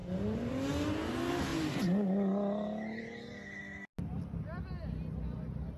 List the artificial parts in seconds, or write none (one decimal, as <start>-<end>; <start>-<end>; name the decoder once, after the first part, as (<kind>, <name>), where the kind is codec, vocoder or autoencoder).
none